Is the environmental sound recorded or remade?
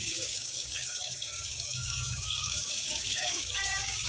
remade